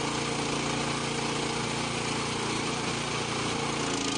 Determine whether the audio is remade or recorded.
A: recorded